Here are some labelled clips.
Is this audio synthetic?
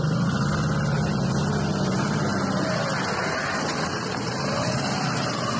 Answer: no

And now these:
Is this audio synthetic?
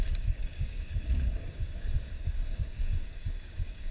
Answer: yes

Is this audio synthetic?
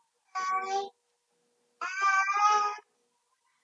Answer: no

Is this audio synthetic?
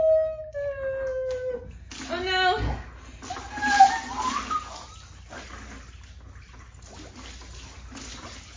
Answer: no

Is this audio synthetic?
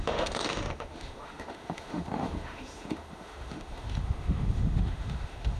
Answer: yes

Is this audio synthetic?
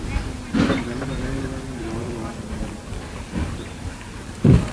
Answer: no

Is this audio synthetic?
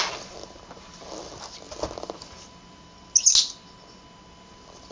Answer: no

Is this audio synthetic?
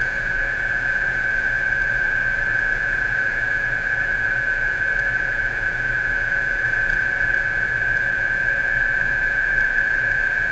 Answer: yes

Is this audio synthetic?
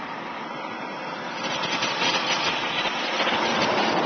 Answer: no